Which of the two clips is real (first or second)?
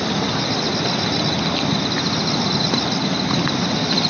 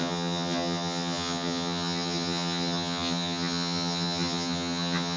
first